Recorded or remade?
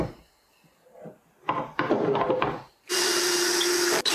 recorded